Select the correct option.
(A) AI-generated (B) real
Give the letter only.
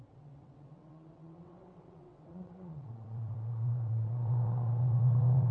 A